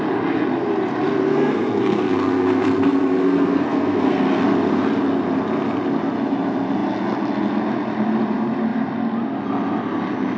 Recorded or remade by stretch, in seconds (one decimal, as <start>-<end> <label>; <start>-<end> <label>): 0.0-1.3 recorded; 1.3-4.4 remade; 4.4-10.4 recorded